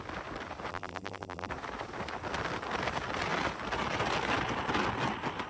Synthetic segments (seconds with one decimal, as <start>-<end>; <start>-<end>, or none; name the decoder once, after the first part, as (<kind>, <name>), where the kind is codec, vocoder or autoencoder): 0.7-1.5 (vocoder, BigVGAN v2)